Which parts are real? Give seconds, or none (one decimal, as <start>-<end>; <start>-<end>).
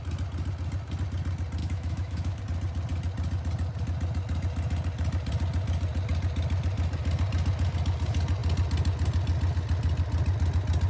0.0-1.6; 2.4-10.9